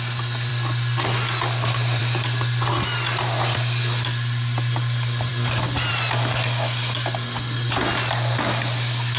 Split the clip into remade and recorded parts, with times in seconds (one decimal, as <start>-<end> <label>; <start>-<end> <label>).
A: 0.0-9.2 recorded